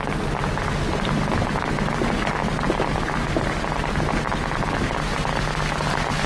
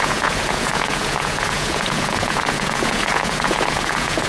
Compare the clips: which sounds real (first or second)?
first